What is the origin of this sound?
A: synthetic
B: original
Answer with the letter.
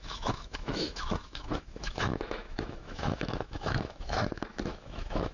A